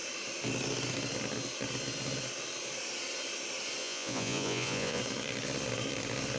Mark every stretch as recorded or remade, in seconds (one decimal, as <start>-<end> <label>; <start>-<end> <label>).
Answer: 0.0-3.8 recorded; 3.8-5.0 remade; 5.0-6.4 recorded